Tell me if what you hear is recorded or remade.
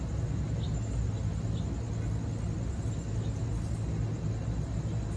recorded